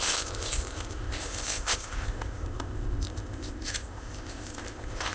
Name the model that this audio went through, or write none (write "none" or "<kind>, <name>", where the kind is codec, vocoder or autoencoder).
codec, ZipCodec